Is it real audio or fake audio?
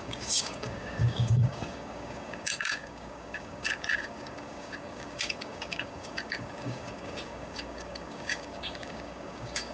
fake